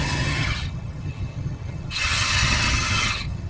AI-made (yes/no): yes